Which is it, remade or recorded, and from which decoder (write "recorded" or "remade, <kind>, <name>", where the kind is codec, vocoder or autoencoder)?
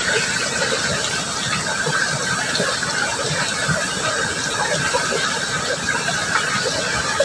recorded